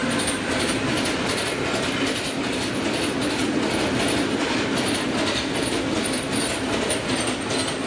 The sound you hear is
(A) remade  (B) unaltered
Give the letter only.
B